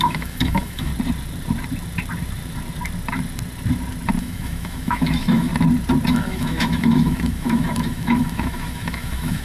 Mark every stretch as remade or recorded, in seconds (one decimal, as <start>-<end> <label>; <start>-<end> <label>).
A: 0.0-0.9 remade; 0.9-4.2 recorded; 4.2-5.5 remade; 5.5-6.1 recorded; 6.1-9.4 remade